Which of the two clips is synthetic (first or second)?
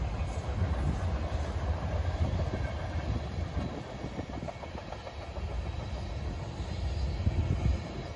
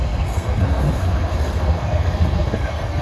second